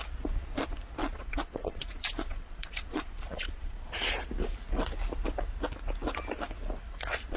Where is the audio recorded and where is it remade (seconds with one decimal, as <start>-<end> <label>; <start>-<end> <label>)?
0.0-1.0 recorded; 1.0-3.9 remade; 3.9-7.4 recorded